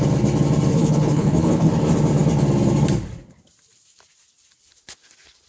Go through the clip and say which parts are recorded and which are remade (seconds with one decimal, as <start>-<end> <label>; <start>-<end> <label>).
0.0-0.7 recorded; 0.7-1.7 remade; 1.7-5.5 recorded